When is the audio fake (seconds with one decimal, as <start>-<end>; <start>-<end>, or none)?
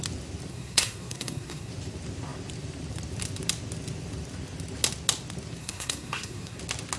0.5-1.7; 5.6-6.6